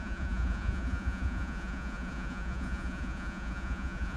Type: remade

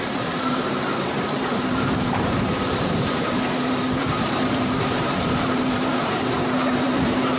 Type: remade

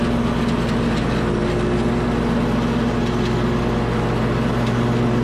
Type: recorded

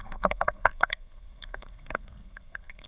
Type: remade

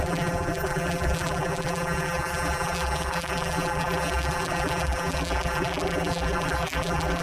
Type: remade